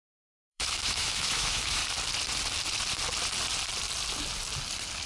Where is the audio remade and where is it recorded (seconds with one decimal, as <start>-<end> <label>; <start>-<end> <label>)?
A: 0.0-1.8 remade; 1.8-5.1 recorded